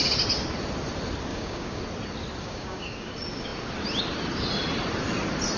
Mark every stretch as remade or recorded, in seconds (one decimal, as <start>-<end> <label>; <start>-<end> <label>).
0.0-1.3 recorded; 1.3-1.8 remade; 1.8-2.4 recorded; 2.4-3.1 remade; 3.1-5.6 recorded

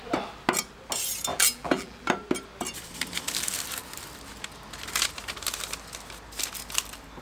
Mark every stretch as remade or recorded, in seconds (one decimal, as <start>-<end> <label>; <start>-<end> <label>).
0.0-1.3 recorded; 1.3-2.0 remade; 2.0-7.2 recorded

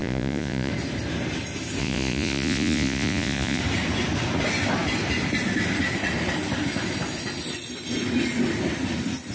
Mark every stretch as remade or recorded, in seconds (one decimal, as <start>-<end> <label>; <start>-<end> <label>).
0.0-0.7 remade; 0.7-1.8 recorded; 1.8-3.6 remade; 3.6-9.3 recorded

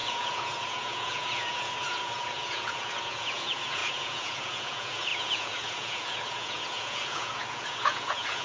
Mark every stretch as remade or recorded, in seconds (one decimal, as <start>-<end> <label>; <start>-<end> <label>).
0.0-8.4 remade

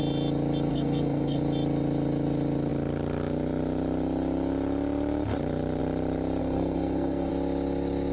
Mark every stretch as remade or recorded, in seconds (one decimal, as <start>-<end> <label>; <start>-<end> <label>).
0.0-0.7 recorded; 0.7-1.4 remade; 1.4-6.4 recorded; 6.4-7.3 remade; 7.3-8.1 recorded

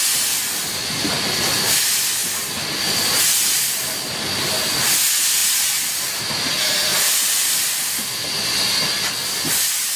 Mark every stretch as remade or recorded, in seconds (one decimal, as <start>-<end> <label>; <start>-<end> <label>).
0.0-6.9 recorded; 6.9-8.3 remade; 8.3-10.0 recorded

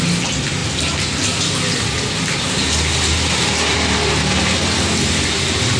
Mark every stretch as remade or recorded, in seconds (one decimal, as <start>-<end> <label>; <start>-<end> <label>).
0.0-5.8 recorded